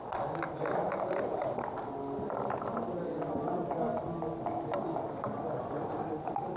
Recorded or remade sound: recorded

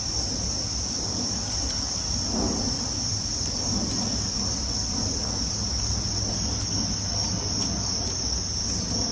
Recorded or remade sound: recorded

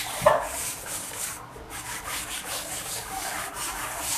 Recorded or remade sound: remade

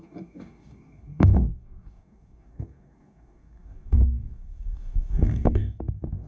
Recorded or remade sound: remade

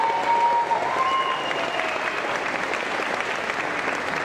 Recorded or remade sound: recorded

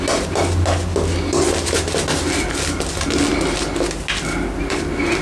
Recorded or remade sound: recorded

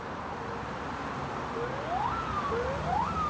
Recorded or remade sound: recorded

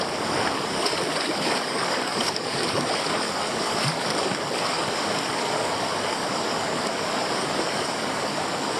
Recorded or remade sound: remade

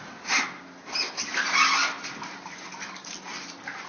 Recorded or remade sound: recorded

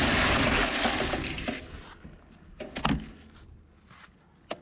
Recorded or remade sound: recorded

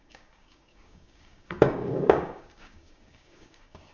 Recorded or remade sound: remade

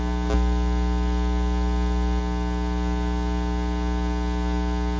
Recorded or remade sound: recorded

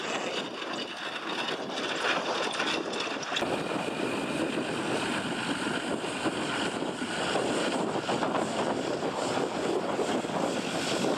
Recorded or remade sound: recorded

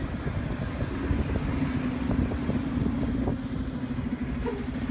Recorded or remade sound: recorded